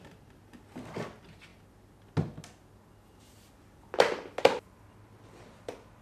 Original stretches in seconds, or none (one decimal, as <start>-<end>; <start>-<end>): 0.0-6.0